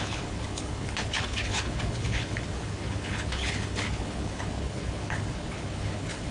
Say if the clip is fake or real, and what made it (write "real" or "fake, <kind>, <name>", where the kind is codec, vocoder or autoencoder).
fake, codec, HILCodec